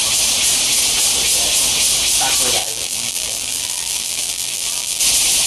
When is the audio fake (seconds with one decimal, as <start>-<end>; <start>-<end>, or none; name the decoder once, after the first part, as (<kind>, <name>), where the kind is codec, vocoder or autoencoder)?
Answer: 2.6-5.0 (vocoder, BigVGAN v2)